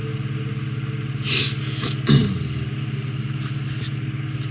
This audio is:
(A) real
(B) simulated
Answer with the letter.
A